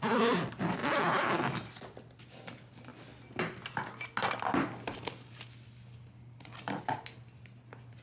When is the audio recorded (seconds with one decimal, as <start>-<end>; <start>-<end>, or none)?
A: 0.0-8.0